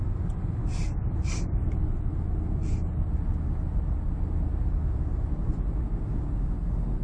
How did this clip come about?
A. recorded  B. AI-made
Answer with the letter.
A